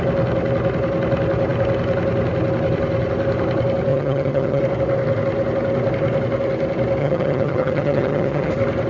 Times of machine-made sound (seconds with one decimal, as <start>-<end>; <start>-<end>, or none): 3.9-4.6; 7.0-8.5